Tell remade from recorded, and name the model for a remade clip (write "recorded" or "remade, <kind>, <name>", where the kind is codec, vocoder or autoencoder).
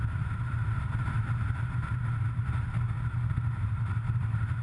remade, vocoder, BigVGAN v2